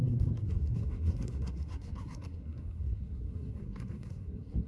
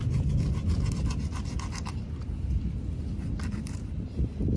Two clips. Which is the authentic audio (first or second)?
second